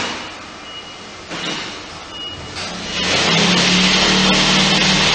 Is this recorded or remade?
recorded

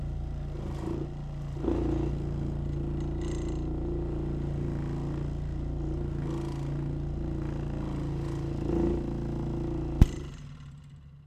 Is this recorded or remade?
recorded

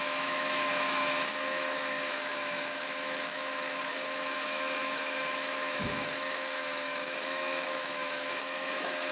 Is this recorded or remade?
remade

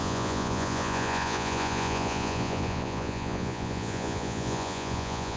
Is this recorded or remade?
remade